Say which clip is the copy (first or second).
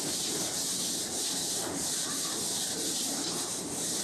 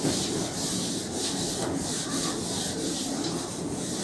first